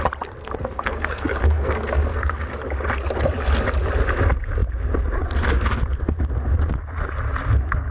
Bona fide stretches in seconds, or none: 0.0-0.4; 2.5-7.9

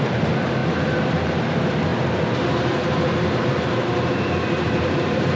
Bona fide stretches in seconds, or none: none

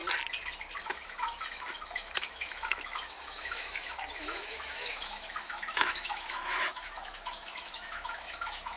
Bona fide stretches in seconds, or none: 0.0-0.8

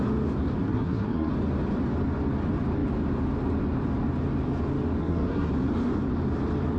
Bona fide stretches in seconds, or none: 0.0-0.6; 1.3-5.0; 5.5-6.8

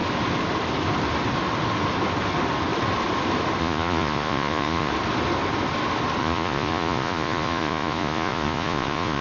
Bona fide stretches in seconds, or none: 0.0-3.6; 4.9-6.2

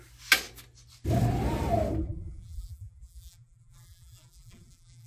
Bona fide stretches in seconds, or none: 0.0-2.0

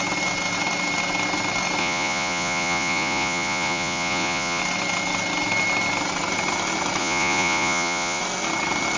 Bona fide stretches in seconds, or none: 0.0-1.8; 4.6-7.0; 8.2-9.0